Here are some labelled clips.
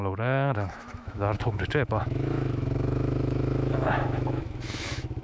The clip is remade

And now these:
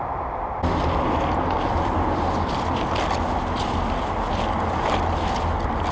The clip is recorded